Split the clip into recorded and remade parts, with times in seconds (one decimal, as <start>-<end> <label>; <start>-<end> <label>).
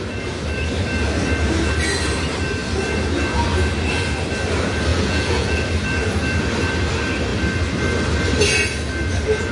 0.0-4.9 recorded; 4.9-5.6 remade; 5.6-9.5 recorded